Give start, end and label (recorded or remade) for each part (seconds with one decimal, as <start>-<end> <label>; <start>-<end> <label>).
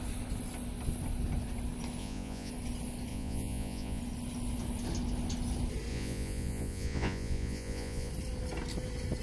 0.0-2.0 recorded; 2.0-2.5 remade; 2.5-3.1 recorded; 3.1-4.0 remade; 4.0-5.9 recorded; 5.9-8.1 remade; 8.1-9.2 recorded